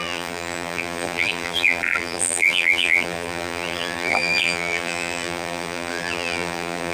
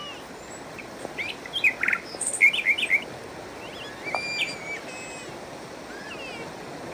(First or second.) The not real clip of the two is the first